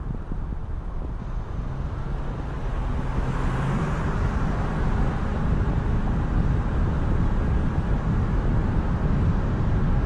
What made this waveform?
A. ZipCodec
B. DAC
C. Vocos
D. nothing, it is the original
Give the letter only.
D